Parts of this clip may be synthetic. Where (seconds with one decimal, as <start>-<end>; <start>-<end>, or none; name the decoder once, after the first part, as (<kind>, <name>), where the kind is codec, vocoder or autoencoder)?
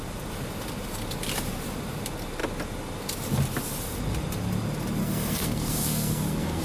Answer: 5.0-6.6 (codec, SNAC)